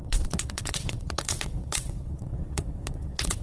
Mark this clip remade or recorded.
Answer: remade